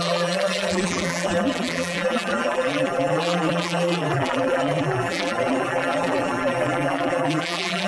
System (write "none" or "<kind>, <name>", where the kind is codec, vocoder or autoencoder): vocoder, BigVGAN v2